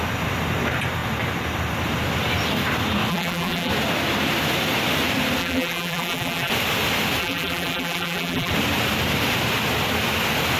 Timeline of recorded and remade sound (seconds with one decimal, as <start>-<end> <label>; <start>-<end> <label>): 0.0-3.1 recorded; 3.1-3.7 remade; 3.7-5.4 recorded; 5.4-6.5 remade; 6.5-7.2 recorded; 7.2-8.5 remade; 8.5-10.6 recorded